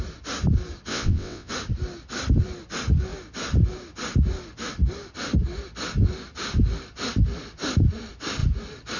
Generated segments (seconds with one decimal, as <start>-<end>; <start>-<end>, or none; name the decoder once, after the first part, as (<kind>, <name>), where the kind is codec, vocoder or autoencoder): 0.9-1.5 (vocoder, WaveNeXt)